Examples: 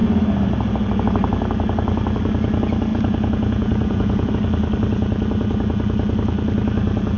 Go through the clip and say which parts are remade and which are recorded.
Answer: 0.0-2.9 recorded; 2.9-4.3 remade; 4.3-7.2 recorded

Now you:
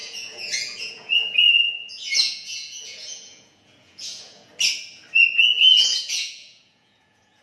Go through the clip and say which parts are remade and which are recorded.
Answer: 0.0-4.5 remade; 4.5-5.3 recorded; 5.3-7.4 remade

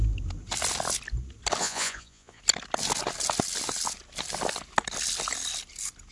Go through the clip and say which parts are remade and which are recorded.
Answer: 0.0-1.6 recorded; 1.6-2.4 remade; 2.4-6.1 recorded

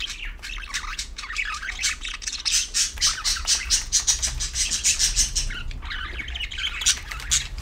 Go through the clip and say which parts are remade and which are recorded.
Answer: 0.0-0.9 recorded; 0.9-2.4 remade; 2.4-3.3 recorded; 3.3-4.0 remade; 4.0-7.6 recorded

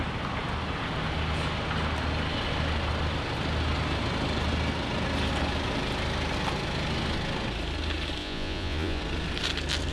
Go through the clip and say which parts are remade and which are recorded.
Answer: 0.0-8.2 recorded; 8.2-9.0 remade; 9.0-9.9 recorded

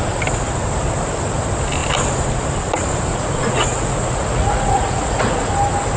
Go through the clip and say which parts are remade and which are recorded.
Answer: 0.0-3.1 recorded; 3.1-5.5 remade; 5.5-6.0 recorded

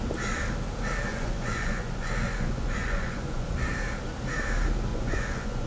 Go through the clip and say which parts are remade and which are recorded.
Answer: 0.0-1.1 recorded; 1.1-3.6 remade; 3.6-4.9 recorded; 4.9-5.7 remade

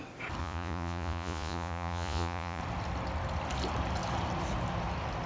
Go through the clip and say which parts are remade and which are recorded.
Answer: 0.0-0.4 recorded; 0.4-2.6 remade; 2.6-5.3 recorded